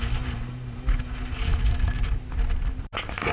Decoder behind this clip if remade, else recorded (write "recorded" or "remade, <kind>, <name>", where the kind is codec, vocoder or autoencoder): recorded